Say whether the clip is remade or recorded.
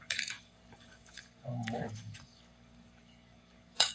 remade